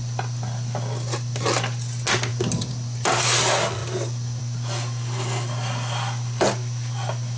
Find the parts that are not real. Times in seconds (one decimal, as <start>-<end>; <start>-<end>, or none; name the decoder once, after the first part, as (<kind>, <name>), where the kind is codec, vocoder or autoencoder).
2.3-3.2 (vocoder, BigVGAN v2)